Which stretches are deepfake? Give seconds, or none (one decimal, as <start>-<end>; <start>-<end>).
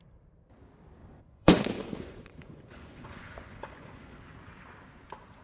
1.0-4.2